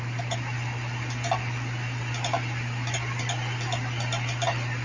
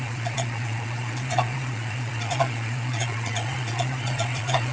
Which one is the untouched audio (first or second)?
first